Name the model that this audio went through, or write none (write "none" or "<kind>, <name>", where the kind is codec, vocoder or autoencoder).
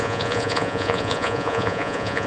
vocoder, Vocos